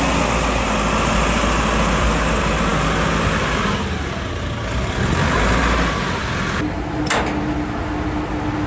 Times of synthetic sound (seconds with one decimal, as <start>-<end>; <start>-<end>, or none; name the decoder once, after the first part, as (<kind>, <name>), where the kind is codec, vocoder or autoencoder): none